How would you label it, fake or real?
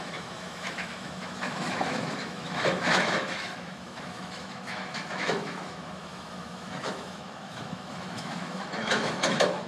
fake